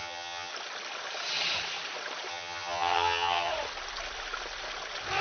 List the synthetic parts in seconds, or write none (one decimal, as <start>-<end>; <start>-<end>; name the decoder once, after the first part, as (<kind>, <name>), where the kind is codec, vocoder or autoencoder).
0.0-0.5 (vocoder, HiFi-GAN); 2.3-3.5